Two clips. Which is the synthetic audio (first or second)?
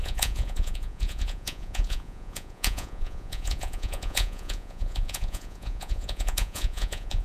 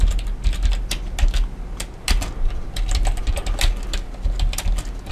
first